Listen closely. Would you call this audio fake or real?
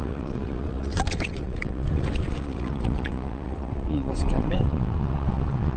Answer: fake